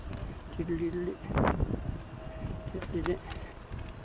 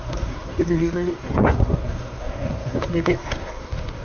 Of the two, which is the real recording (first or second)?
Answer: first